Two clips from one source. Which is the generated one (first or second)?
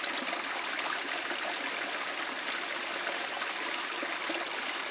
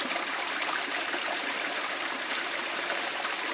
second